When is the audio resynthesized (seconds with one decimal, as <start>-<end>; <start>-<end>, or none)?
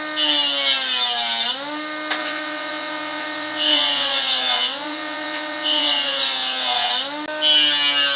2.2-6.9